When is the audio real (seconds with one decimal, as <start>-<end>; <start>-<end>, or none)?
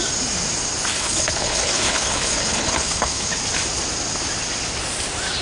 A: 0.0-0.9; 3.4-5.4